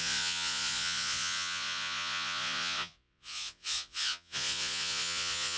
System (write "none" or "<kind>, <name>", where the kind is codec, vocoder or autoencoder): vocoder, Vocos